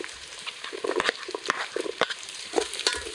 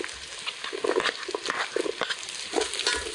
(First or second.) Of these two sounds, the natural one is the second